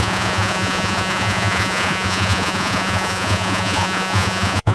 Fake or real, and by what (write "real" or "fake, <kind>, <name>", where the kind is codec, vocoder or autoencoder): fake, vocoder, Vocos